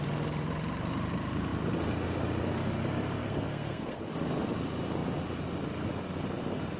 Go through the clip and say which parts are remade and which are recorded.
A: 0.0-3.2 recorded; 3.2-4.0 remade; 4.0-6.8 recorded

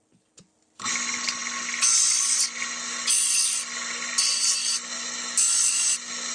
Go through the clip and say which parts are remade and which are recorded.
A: 0.0-6.3 recorded

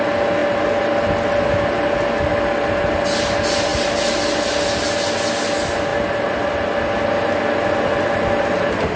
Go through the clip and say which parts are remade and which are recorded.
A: 0.0-9.0 recorded

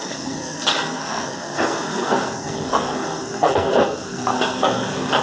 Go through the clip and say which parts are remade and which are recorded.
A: 0.0-5.2 remade

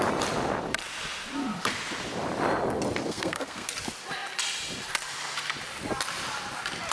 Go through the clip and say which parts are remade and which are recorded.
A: 0.0-3.0 recorded; 3.0-3.7 remade; 3.7-6.9 recorded